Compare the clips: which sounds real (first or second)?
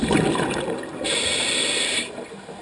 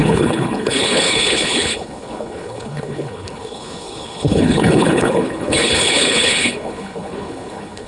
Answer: first